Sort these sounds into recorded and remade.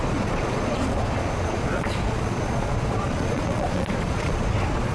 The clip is remade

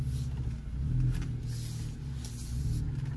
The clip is recorded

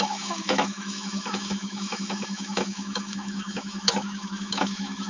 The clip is remade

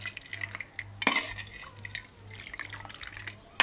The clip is recorded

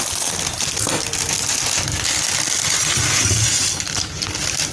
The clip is recorded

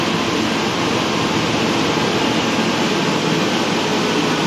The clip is recorded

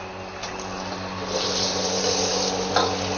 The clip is recorded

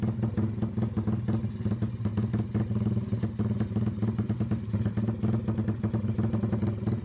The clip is recorded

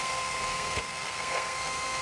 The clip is remade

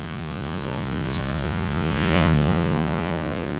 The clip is remade